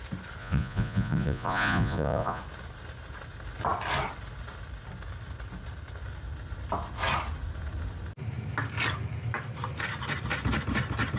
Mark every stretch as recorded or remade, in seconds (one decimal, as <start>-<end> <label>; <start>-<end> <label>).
0.0-0.4 recorded; 0.4-2.4 remade; 2.4-11.2 recorded